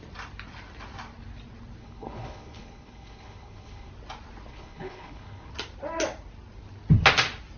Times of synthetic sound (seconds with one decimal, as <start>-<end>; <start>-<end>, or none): 1.8-3.9; 4.5-5.5